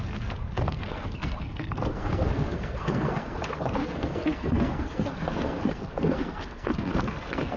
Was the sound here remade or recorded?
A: remade